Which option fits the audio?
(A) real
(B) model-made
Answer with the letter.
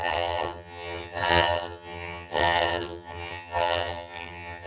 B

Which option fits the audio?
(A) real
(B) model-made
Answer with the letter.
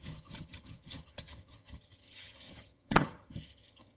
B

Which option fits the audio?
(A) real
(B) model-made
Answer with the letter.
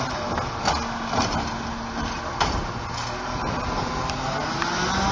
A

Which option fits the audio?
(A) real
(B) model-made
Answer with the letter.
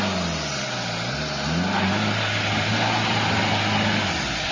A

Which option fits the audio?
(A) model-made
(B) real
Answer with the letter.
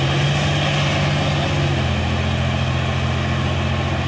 B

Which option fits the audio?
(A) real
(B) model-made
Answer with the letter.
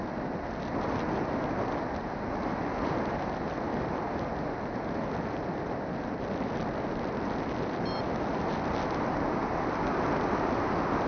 A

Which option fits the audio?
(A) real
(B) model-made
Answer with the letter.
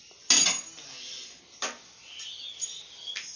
A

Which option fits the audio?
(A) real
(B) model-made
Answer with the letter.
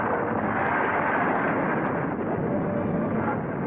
A